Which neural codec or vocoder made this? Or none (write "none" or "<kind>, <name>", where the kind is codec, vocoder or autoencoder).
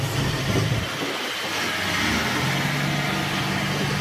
none